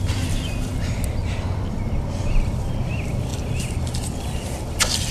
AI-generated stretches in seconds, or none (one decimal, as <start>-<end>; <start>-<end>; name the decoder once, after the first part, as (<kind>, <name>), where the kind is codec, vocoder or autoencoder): 0.0-0.7 (vocoder, BigVGAN v2); 1.7-5.1